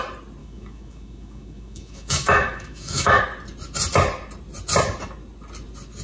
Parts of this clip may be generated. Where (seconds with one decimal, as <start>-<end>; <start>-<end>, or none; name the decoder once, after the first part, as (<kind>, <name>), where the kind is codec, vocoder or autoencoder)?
0.4-3.2 (autoencoder, DAC-VAE)